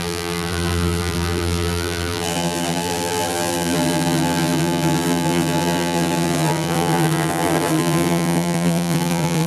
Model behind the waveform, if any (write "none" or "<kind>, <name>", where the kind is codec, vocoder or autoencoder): vocoder, BigVGAN v2